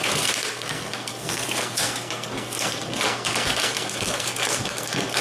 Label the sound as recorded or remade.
remade